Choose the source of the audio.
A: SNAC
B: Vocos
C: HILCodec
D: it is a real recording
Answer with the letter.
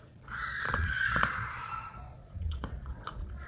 B